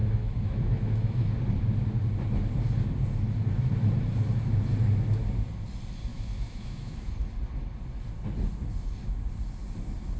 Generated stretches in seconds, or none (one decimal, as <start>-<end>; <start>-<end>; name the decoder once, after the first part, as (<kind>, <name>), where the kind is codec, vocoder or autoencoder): 0.0-1.3 (autoencoder, DAC-VAE); 6.1-7.1